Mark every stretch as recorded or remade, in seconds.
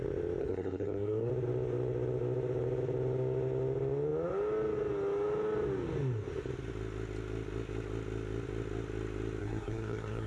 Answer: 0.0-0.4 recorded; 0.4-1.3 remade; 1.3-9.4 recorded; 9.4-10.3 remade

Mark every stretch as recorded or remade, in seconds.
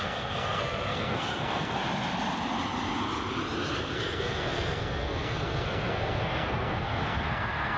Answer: 0.0-1.8 remade; 1.8-3.8 recorded; 3.8-7.8 remade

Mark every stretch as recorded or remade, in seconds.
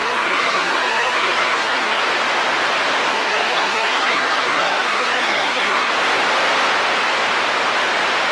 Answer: 0.0-2.0 remade; 2.0-3.1 recorded; 3.1-5.9 remade; 5.9-8.3 recorded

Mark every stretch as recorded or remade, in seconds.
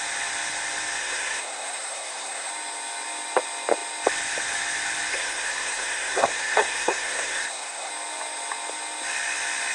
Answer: 0.0-1.0 recorded; 1.0-2.5 remade; 2.5-5.1 recorded; 5.1-7.9 remade; 7.9-9.7 recorded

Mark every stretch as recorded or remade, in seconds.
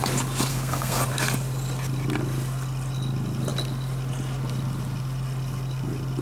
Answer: 0.0-0.5 recorded; 0.5-1.0 remade; 1.0-6.2 recorded